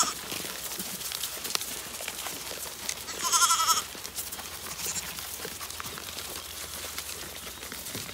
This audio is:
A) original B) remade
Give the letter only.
B